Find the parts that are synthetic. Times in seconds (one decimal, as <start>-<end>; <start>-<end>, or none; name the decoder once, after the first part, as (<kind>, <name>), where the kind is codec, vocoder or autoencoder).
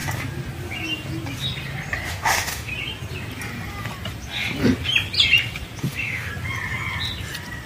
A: 2.1-2.7 (autoencoder, DAC-VAE); 5.8-6.3